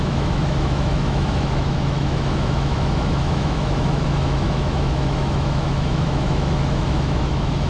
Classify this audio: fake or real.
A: fake